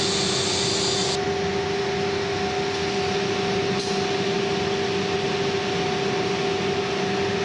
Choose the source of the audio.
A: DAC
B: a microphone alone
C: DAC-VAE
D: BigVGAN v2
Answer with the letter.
B